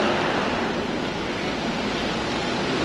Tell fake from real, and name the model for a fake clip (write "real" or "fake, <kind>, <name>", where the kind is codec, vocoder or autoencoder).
real